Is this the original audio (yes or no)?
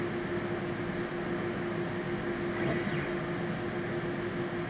yes